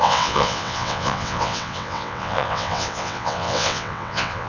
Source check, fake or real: fake